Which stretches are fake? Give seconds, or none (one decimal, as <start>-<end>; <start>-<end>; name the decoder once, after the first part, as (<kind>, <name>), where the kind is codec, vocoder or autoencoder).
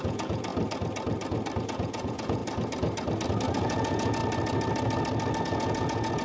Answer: 0.0-0.5 (vocoder, Vocos); 1.6-2.4; 3.5-4.2; 5.4-6.2